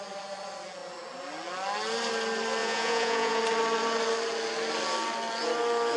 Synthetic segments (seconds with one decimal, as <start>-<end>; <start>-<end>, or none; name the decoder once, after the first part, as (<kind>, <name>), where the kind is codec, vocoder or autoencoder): 2.6-3.4 (vocoder, Vocos)

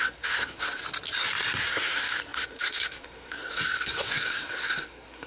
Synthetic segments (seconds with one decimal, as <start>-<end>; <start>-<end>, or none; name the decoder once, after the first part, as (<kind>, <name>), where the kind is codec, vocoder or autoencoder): 0.0-0.8 (codec, SNAC); 1.7-5.3

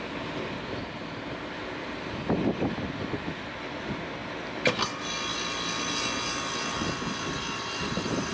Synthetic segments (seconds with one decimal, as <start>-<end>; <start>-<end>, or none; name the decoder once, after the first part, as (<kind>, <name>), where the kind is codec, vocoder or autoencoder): none

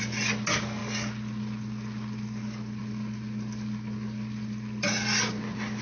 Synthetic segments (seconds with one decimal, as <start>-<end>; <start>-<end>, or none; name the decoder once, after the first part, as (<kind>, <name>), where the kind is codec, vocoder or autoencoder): none

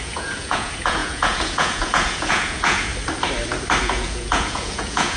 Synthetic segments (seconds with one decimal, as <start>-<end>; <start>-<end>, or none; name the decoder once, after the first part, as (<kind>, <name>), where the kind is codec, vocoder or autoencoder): 0.0-2.9 (vocoder, Vocos); 3.8-5.2

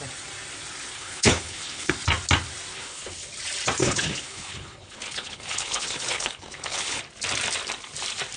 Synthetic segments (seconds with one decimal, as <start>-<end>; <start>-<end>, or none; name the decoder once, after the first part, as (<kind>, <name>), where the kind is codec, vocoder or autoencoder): 0.9-1.9 (codec, HILCodec); 2.7-3.3; 3.8-7.0

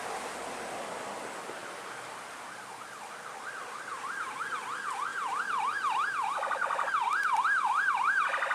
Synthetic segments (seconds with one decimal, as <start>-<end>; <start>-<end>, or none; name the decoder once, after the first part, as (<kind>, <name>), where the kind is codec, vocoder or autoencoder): none

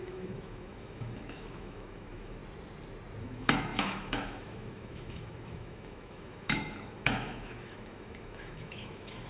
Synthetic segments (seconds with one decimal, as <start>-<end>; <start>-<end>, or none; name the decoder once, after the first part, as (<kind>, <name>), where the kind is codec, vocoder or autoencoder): 0.0-2.4 (autoencoder, DAC-VAE); 3.2-9.3